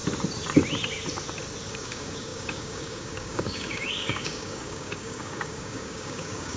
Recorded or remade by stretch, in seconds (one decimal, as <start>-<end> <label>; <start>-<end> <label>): 0.0-1.7 recorded; 1.7-6.6 remade